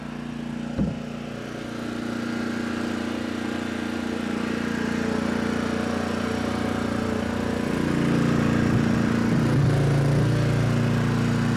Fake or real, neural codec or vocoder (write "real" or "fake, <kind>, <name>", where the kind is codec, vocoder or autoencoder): real